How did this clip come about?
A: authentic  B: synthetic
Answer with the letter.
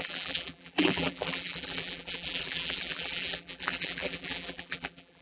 B